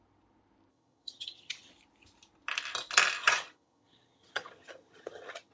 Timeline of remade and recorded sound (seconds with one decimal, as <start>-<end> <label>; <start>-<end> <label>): 0.0-0.7 recorded; 0.7-1.7 remade; 1.7-3.2 recorded; 3.2-5.5 remade